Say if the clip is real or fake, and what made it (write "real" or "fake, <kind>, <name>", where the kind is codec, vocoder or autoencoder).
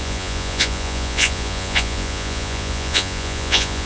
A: fake, vocoder, Vocos